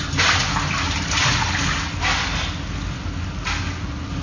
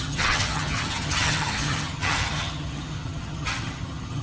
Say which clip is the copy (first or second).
second